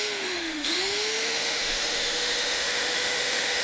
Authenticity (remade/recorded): remade